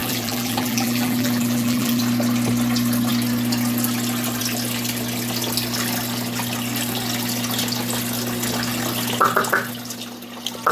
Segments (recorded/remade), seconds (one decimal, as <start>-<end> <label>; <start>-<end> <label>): 0.0-2.0 remade; 2.0-10.7 recorded